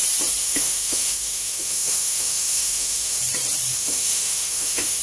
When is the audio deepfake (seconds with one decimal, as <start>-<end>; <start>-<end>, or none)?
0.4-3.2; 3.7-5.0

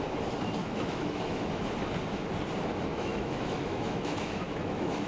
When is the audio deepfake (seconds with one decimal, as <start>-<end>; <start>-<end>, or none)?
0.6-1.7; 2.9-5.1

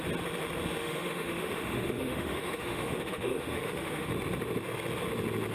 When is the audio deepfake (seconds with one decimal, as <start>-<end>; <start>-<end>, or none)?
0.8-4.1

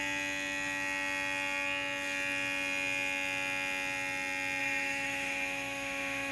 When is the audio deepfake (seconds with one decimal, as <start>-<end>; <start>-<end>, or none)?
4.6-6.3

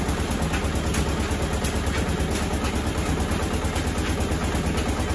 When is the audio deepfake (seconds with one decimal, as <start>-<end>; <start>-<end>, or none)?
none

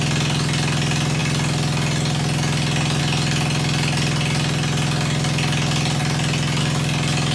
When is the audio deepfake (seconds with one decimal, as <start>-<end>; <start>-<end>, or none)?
none